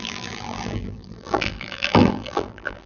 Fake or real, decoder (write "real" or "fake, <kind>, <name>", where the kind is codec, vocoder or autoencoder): fake, vocoder, BigVGAN v2